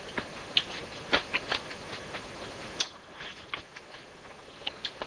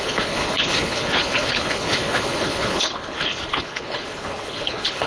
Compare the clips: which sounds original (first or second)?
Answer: first